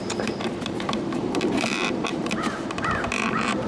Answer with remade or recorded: remade